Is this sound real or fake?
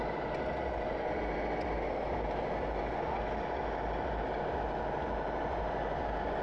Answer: real